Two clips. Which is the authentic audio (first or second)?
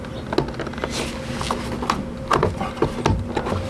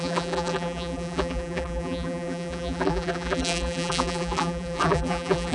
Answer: first